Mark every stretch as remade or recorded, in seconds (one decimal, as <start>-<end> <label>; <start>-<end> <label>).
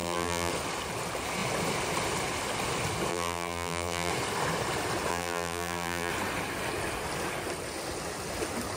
0.0-0.5 remade; 0.5-3.1 recorded; 3.1-4.1 remade; 4.1-5.1 recorded; 5.1-6.1 remade; 6.1-8.8 recorded